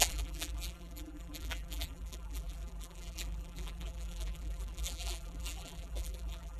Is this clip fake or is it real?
fake